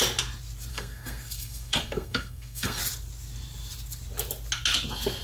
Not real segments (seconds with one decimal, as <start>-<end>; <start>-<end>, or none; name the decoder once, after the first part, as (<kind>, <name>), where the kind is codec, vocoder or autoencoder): 0.7-2.8 (codec, SNAC)